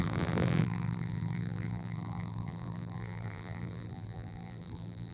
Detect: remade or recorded remade